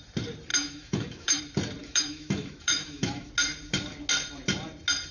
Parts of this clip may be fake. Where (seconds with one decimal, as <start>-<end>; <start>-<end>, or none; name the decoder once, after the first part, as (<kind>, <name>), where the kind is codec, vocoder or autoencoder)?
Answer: 0.5-1.4 (autoencoder, DAC-VAE); 1.8-3.3